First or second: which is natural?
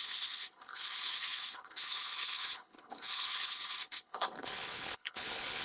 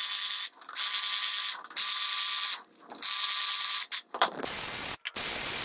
second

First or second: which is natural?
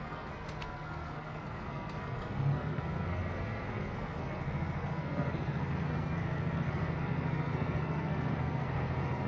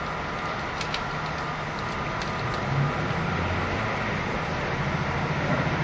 second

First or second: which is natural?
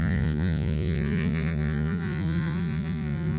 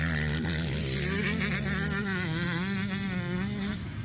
second